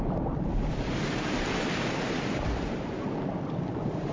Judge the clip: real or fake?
real